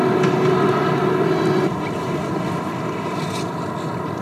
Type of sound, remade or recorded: recorded